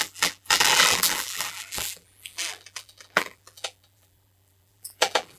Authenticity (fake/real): fake